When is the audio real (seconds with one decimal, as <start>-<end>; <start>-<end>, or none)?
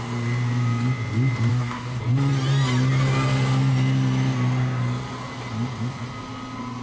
0.0-1.5; 2.0-6.8